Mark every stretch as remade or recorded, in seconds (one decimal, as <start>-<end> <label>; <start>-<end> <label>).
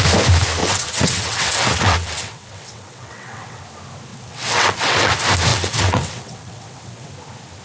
0.0-0.6 recorded; 0.6-3.6 remade; 3.6-4.1 recorded; 4.1-5.1 remade; 5.1-5.5 recorded; 5.5-7.1 remade; 7.1-7.6 recorded